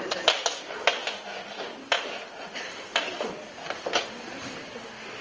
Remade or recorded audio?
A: recorded